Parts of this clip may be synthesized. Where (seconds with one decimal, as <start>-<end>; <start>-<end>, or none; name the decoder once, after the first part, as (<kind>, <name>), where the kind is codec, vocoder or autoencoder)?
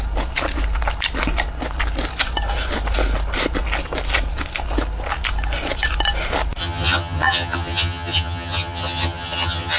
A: 6.6-9.8 (vocoder, HiFi-GAN)